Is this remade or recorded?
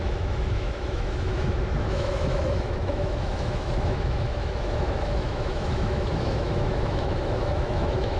remade